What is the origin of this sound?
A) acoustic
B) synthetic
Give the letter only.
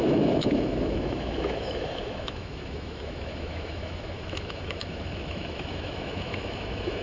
B